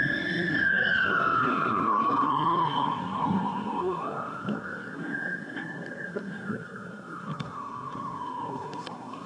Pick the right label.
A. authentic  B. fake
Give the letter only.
B